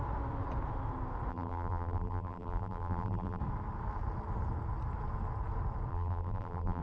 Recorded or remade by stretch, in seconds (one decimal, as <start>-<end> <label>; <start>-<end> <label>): 0.0-1.3 recorded; 1.3-3.4 remade; 3.4-5.9 recorded; 5.9-6.8 remade